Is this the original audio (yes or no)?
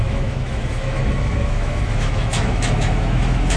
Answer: no